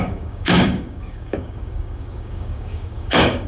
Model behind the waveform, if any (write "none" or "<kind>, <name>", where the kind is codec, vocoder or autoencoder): codec, DAC